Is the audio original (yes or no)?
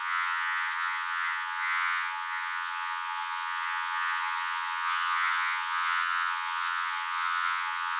no